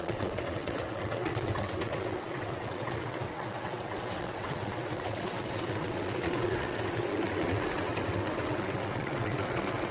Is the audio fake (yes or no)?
yes